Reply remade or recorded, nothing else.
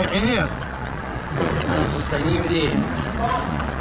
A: remade